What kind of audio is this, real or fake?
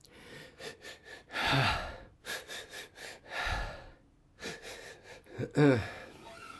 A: real